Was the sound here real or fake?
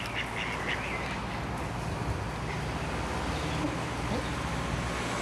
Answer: real